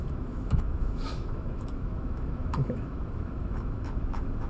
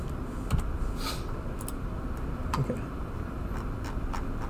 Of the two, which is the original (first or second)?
second